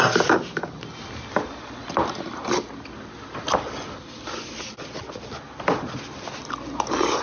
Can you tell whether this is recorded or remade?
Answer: recorded